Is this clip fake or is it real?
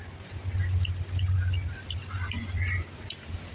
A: real